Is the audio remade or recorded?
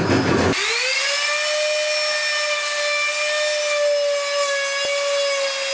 recorded